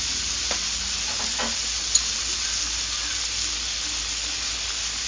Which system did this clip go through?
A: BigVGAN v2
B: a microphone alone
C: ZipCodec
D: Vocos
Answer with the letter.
B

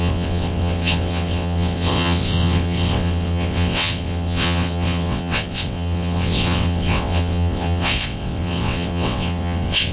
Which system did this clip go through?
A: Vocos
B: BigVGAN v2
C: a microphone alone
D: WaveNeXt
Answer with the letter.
D